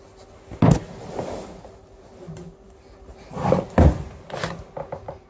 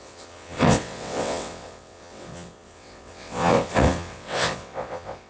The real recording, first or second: first